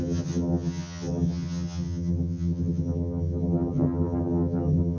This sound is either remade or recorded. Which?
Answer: remade